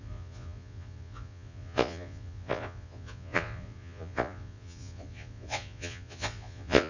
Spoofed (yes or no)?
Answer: yes